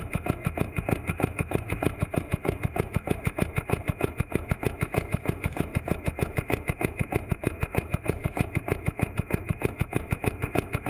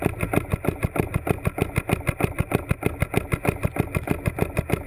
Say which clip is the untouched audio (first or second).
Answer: second